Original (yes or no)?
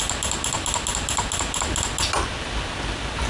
yes